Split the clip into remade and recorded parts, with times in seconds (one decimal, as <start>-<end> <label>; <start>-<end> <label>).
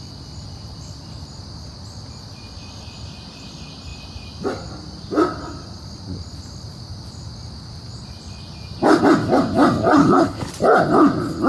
0.0-10.0 recorded; 10.0-10.5 remade; 10.5-11.5 recorded